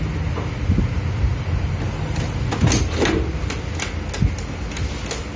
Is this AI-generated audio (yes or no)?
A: no